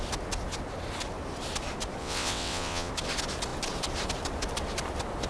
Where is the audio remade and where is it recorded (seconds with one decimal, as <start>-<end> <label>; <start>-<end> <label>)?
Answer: 0.0-2.0 recorded; 2.0-2.9 remade; 2.9-5.3 recorded